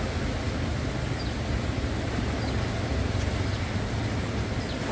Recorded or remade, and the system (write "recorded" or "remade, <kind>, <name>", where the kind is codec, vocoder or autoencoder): recorded